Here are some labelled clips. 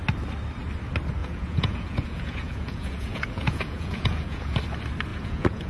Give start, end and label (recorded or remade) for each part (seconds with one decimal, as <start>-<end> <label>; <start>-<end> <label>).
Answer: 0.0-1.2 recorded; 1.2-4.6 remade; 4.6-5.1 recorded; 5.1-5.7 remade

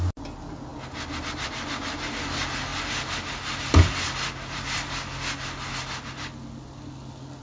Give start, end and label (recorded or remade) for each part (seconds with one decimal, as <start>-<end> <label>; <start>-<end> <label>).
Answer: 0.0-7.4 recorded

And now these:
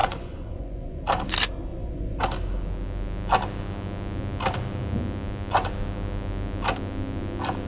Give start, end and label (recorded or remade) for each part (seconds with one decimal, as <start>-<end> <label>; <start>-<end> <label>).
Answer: 0.0-1.0 remade; 1.0-1.7 recorded; 1.7-2.2 remade; 2.2-7.7 recorded